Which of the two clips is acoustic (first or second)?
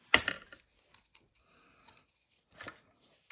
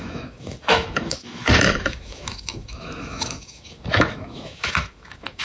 first